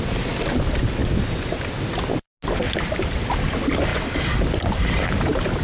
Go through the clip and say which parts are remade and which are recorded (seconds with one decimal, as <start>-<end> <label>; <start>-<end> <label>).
0.0-3.9 recorded; 3.9-5.0 remade; 5.0-5.6 recorded